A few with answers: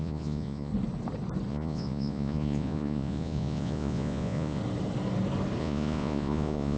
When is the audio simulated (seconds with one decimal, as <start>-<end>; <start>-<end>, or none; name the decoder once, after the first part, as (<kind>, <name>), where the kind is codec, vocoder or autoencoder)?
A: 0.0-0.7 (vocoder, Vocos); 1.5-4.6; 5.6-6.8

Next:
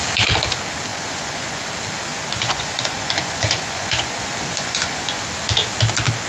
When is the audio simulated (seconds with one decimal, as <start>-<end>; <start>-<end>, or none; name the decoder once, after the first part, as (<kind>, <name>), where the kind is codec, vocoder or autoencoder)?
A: 0.9-1.7 (vocoder, Vocos); 2.1-5.2

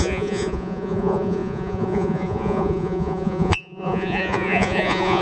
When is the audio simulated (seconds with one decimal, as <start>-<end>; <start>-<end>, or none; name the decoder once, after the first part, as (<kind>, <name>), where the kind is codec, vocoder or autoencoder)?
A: 0.0-5.2 (vocoder, Vocos)